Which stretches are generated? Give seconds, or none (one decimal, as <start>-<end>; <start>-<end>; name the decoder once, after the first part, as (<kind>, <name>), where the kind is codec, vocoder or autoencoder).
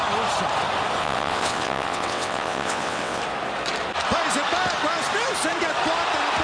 1.0-3.2 (vocoder, WaveNeXt)